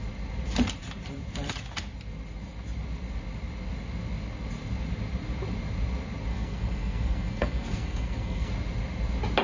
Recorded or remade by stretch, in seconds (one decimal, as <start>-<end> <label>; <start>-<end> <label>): 0.0-6.3 recorded; 6.3-8.5 remade; 8.5-9.4 recorded